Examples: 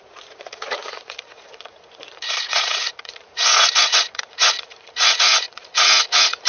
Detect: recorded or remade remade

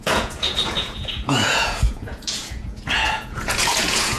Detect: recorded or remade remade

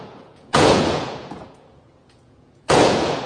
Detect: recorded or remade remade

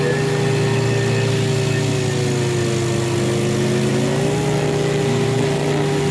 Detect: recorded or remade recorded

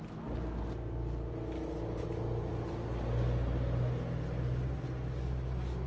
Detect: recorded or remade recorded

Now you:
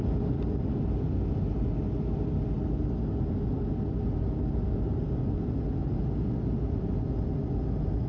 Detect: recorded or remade recorded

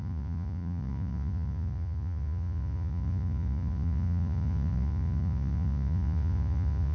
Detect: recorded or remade remade